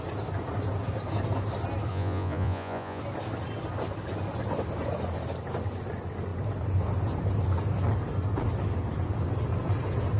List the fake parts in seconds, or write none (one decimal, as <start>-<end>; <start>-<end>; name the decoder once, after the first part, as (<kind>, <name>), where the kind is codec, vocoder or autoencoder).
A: 1.9-3.0 (vocoder, Vocos)